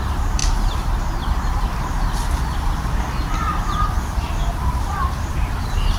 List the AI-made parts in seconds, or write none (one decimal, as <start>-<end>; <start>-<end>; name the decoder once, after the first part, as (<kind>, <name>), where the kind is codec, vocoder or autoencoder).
0.0-0.4 (vocoder, BigVGAN v2); 3.4-6.0